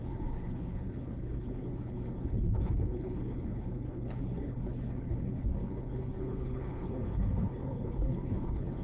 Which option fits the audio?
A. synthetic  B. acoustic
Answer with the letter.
A